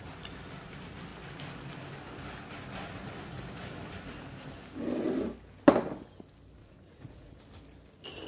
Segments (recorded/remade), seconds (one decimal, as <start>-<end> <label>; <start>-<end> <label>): 0.0-6.6 recorded; 6.6-7.4 remade; 7.4-8.3 recorded